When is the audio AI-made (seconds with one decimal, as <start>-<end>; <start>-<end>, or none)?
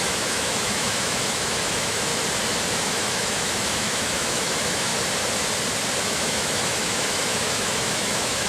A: 0.0-2.1; 2.7-4.9; 6.0-8.5